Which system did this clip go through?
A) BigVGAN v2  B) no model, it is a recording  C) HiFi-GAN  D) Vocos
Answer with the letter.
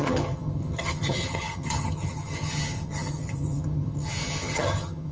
C